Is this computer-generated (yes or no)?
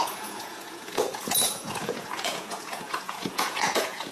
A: yes